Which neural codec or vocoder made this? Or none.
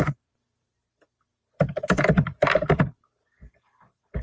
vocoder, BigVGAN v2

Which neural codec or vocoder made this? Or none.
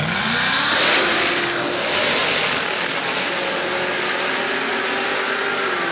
none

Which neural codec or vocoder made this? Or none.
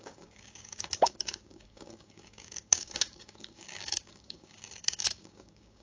codec, DAC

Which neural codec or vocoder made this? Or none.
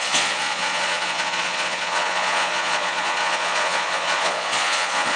vocoder, Vocos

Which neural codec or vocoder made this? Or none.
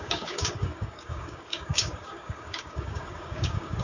codec, DAC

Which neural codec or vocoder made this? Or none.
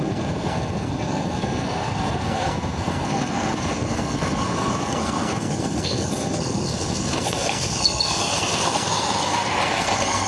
codec, SNAC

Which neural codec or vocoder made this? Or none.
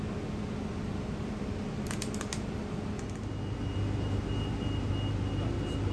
none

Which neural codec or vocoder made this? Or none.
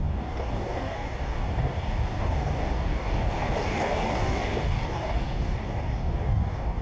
codec, DAC